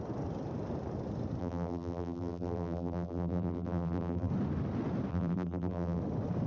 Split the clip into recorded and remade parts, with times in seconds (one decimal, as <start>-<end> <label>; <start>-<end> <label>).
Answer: 0.0-1.4 recorded; 1.4-4.3 remade; 4.3-5.1 recorded; 5.1-6.0 remade; 6.0-6.5 recorded